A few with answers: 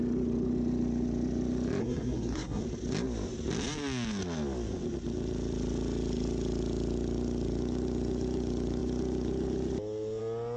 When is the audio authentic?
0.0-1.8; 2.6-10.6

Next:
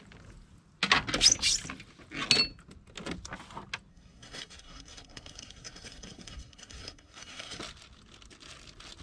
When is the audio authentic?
0.0-3.9; 7.6-9.0

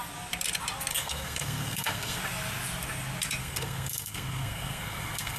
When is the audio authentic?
0.0-0.9; 2.2-3.4

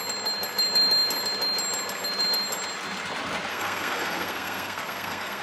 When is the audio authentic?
0.0-3.5

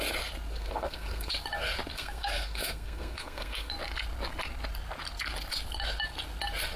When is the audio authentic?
0.0-0.5; 1.3-1.9; 3.7-6.8